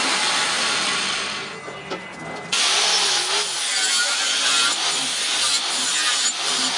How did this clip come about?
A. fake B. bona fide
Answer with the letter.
B